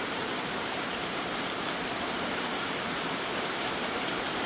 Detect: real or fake fake